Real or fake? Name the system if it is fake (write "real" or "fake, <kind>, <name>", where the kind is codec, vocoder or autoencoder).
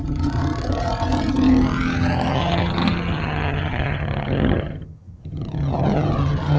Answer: fake, vocoder, HiFi-GAN